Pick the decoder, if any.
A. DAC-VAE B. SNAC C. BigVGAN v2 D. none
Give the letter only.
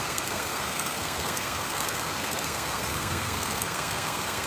B